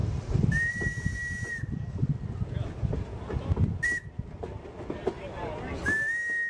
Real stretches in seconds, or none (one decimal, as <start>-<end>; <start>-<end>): 0.0-6.5